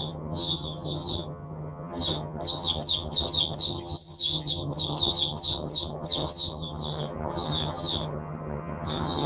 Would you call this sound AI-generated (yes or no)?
yes